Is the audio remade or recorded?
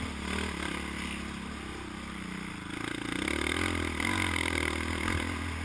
recorded